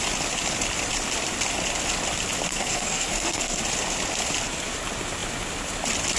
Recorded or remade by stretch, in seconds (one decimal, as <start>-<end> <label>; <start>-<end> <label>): 0.0-2.5 recorded; 2.5-3.6 remade; 3.6-6.2 recorded